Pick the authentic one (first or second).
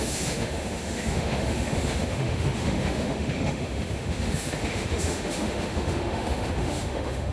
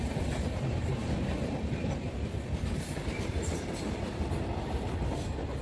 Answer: second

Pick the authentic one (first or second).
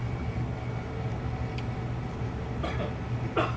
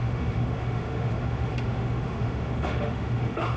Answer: first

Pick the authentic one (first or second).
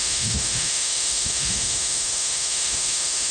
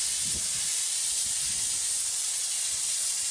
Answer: second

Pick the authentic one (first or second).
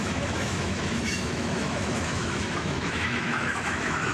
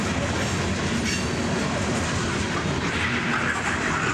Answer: second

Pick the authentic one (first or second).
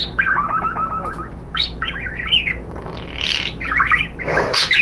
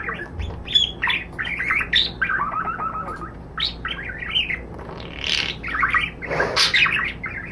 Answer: second